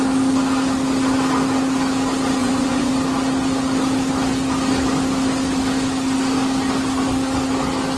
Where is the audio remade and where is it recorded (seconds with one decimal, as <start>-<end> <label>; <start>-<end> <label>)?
0.0-2.4 recorded; 2.4-2.9 remade; 2.9-8.0 recorded